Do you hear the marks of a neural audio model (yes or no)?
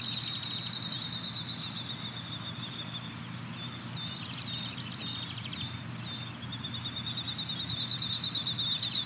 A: no